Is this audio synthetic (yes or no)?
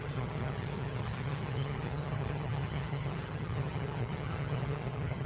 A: yes